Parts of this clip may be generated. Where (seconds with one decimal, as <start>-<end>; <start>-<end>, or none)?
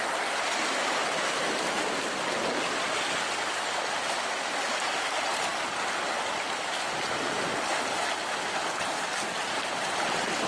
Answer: none